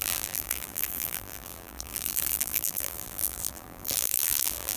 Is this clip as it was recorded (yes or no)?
no